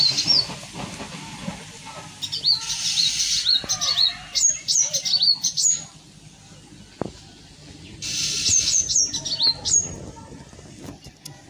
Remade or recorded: recorded